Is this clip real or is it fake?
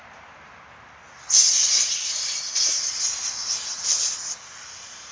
real